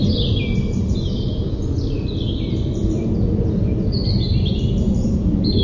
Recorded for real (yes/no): yes